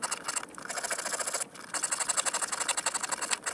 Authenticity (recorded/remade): recorded